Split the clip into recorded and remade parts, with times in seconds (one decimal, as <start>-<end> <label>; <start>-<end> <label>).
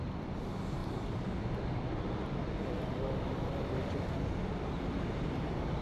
0.0-5.8 recorded